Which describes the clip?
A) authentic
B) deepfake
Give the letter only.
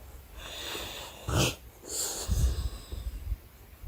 A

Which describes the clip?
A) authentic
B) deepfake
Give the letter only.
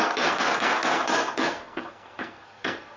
B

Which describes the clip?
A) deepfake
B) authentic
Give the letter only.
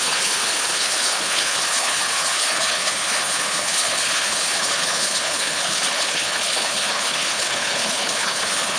A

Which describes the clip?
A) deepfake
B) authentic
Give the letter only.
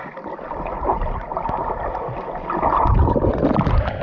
B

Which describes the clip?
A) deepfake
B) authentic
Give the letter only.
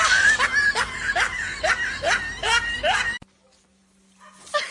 B